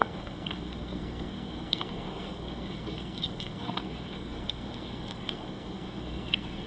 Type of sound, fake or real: fake